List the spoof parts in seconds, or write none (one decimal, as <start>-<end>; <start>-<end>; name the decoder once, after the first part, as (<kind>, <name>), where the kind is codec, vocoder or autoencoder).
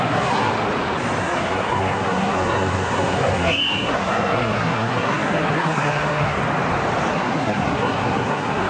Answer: 0.0-0.5 (codec, SNAC); 1.2-6.4; 7.1-8.7